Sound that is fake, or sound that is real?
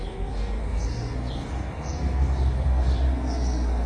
fake